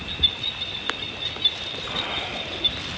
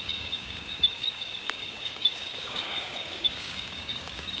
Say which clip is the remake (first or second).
second